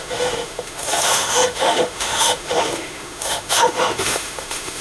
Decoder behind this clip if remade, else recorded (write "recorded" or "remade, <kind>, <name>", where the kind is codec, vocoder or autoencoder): remade, autoencoder, DAC-VAE